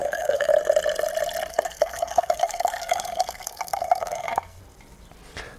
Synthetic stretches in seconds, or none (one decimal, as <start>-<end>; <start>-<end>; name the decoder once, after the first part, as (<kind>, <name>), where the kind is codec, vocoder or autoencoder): 0.0-0.5 (codec, SNAC); 1.5-4.6